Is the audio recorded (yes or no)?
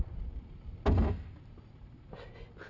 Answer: yes